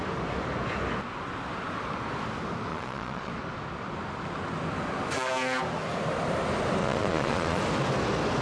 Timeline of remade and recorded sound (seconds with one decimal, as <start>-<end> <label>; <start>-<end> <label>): 0.0-2.7 recorded; 2.7-3.3 remade; 3.3-6.8 recorded; 6.8-7.6 remade; 7.6-8.4 recorded